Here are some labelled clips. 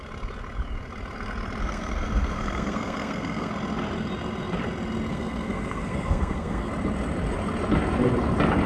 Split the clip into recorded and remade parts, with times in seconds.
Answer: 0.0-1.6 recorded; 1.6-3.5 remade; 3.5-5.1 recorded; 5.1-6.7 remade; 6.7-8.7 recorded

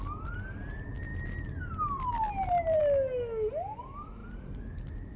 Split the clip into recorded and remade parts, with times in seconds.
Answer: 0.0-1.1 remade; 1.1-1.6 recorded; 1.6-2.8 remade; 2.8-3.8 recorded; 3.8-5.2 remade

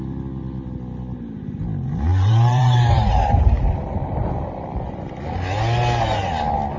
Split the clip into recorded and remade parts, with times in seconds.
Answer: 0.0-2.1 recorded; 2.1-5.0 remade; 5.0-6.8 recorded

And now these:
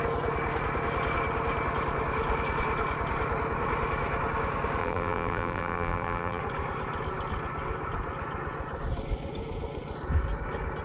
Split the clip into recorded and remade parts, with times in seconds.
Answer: 0.0-4.8 recorded; 4.8-6.4 remade; 6.4-10.8 recorded

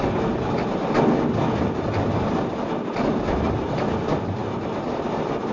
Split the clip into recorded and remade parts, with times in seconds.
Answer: 0.0-5.5 recorded

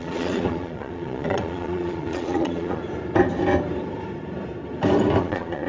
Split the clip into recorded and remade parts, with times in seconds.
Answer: 0.0-2.8 remade; 2.8-5.2 recorded; 5.2-5.7 remade

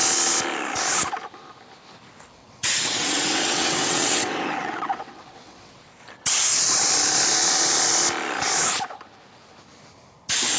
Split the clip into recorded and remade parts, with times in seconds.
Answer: 0.0-2.4 recorded; 2.4-5.8 remade; 5.8-10.6 recorded